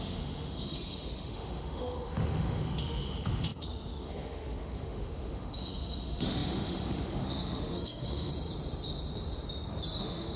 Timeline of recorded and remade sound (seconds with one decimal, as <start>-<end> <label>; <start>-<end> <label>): 0.0-8.3 remade; 8.3-10.0 recorded; 10.0-10.4 remade